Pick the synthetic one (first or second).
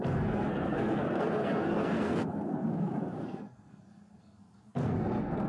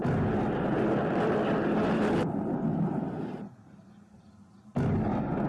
first